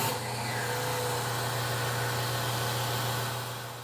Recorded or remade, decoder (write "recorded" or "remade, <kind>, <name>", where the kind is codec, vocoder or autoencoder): recorded